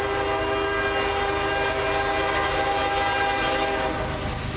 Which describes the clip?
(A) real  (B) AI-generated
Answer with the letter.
A